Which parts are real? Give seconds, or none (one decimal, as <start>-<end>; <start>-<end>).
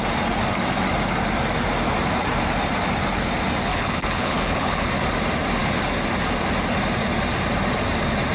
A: 0.0-3.7; 4.9-8.3